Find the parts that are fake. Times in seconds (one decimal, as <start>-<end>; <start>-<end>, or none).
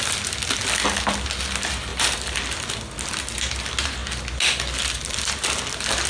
1.9-2.4